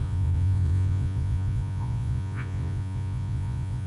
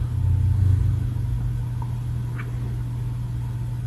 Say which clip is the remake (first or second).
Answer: first